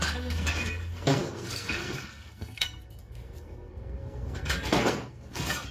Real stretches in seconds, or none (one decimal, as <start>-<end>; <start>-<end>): none